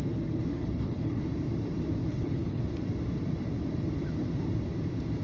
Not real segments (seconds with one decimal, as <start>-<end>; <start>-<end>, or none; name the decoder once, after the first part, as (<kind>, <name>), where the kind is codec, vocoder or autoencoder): 0.5-1.2 (codec, HILCodec); 2.0-2.6